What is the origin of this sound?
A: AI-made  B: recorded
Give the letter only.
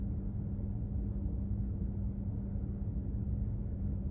B